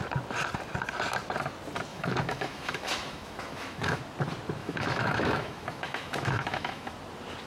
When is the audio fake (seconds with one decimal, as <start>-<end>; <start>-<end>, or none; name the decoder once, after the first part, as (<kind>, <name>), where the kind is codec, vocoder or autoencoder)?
1.9-4.0 (autoencoder, DAC-VAE); 4.6-6.9